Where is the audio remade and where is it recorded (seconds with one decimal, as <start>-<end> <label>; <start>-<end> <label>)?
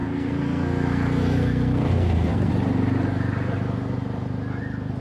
0.0-2.5 remade; 2.5-5.0 recorded